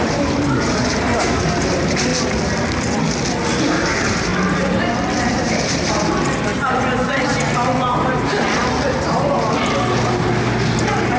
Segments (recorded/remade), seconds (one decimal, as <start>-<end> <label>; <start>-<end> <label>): 0.0-2.1 remade; 2.1-3.7 recorded; 3.7-4.3 remade; 4.3-5.2 recorded; 5.2-6.5 remade; 6.5-10.2 recorded; 10.2-11.2 remade